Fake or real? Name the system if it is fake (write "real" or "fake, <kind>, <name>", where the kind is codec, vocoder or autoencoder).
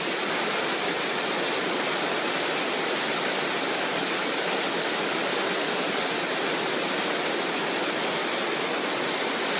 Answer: real